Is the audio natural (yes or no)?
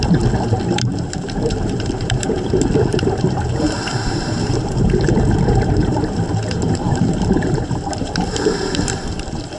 no